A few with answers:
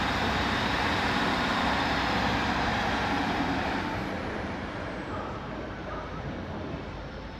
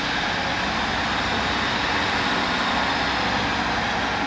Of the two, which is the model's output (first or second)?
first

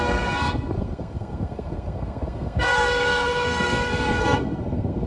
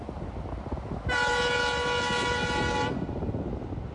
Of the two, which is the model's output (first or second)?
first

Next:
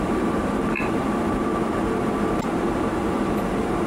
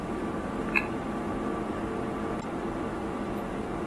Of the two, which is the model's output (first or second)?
first